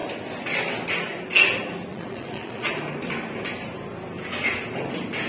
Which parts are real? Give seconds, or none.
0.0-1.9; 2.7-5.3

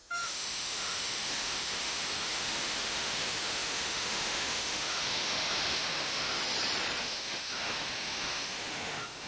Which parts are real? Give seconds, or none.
6.4-7.0

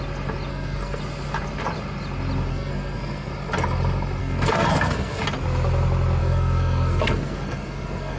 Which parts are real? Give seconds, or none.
0.0-0.5; 1.0-2.5; 3.3-4.2; 5.2-6.2

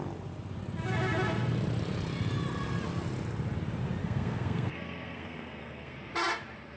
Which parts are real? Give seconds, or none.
0.0-4.0; 6.1-6.8

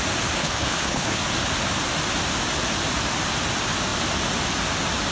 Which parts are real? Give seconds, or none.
0.0-0.4; 1.2-5.1

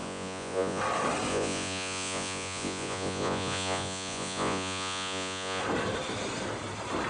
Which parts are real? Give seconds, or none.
0.8-1.3; 5.6-7.1

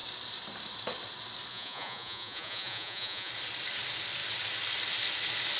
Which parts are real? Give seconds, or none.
0.0-1.5; 3.3-5.6

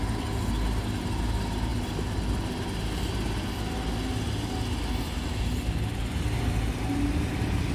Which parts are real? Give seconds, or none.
0.0-7.7